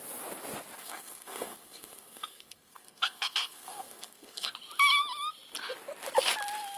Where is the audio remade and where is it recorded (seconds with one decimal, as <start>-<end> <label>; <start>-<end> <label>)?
0.0-0.8 recorded; 0.8-4.5 remade; 4.5-6.8 recorded